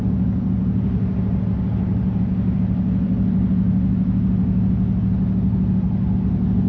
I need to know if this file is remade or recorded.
recorded